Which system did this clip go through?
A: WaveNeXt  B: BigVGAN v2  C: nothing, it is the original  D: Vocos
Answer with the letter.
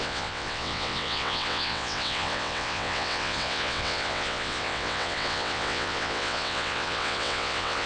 A